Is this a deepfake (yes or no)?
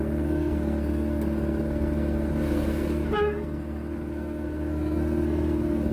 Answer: yes